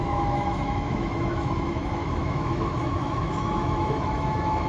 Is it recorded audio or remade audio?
remade